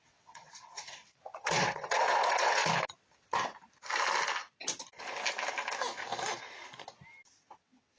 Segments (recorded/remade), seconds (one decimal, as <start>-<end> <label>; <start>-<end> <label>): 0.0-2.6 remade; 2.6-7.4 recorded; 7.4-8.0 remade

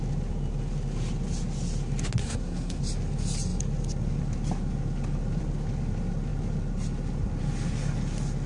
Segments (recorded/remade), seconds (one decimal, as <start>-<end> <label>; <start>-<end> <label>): 0.0-2.2 recorded; 2.2-2.8 remade; 2.8-8.5 recorded

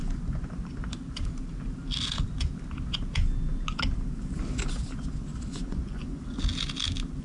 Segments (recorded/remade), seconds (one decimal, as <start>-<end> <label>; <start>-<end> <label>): 0.0-5.5 recorded; 5.5-6.2 remade; 6.2-7.2 recorded

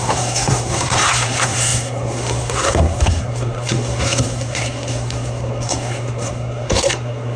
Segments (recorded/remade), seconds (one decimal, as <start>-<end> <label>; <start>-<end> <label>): 0.0-7.4 remade

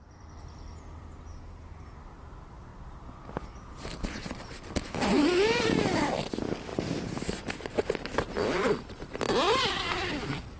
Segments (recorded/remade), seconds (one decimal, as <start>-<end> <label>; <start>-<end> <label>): 0.0-10.6 recorded